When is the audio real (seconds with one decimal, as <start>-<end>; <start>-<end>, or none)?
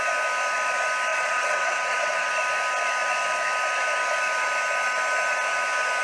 0.0-1.1; 2.3-6.0